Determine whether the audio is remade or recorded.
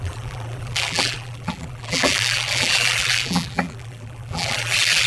remade